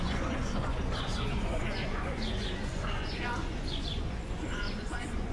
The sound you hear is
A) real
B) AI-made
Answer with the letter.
B